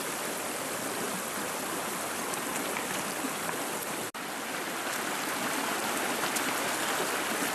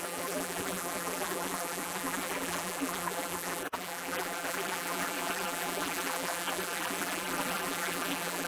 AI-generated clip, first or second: second